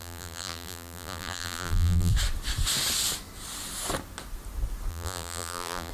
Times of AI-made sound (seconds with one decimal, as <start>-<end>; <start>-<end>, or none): 0.0-2.1; 4.9-5.9